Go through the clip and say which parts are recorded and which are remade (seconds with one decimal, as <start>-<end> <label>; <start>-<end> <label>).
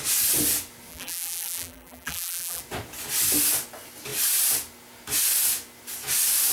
0.0-0.9 recorded; 0.9-2.6 remade; 2.6-6.5 recorded